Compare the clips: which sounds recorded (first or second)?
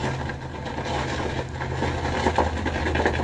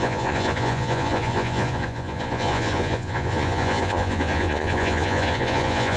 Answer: first